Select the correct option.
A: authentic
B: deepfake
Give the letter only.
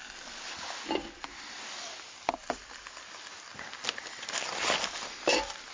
A